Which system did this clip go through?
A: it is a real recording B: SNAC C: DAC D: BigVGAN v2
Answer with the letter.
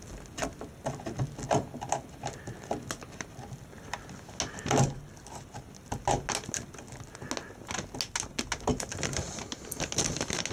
A